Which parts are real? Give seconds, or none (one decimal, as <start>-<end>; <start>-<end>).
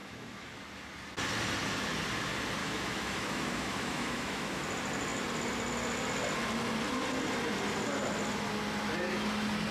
0.5-2.6; 4.6-9.7